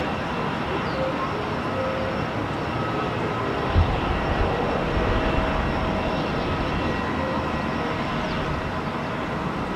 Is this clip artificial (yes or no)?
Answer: no